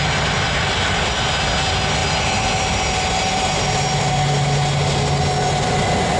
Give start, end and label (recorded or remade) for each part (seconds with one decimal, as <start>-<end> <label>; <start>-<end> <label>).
0.0-6.2 recorded